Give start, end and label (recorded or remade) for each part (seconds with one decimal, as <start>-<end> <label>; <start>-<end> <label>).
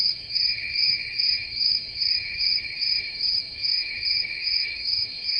0.0-5.4 remade